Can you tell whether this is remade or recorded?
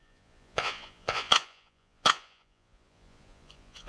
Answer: remade